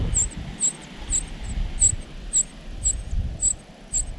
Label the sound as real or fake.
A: real